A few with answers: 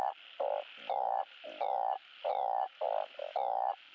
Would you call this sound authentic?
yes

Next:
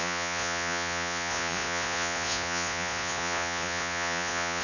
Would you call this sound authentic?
no